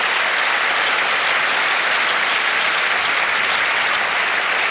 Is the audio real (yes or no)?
yes